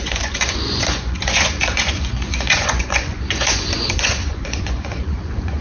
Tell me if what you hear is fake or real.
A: fake